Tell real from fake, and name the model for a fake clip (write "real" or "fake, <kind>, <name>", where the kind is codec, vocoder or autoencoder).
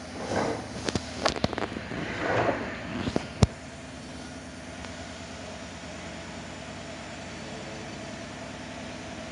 real